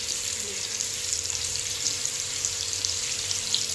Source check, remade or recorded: remade